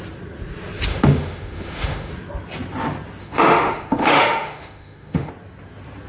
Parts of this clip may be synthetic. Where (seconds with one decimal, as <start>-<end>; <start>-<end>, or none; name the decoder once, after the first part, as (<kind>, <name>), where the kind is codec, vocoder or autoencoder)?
0.9-2.1 (autoencoder, DAC-VAE); 3.2-5.3